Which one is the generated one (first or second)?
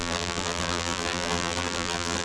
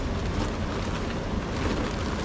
first